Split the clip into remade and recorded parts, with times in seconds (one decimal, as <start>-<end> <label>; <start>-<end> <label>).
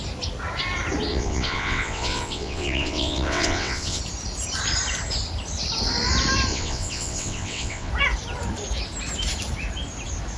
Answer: 0.0-1.1 recorded; 1.1-4.0 remade; 4.0-6.5 recorded; 6.5-7.9 remade; 7.9-10.4 recorded